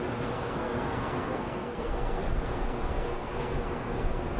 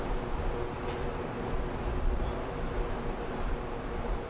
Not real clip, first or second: first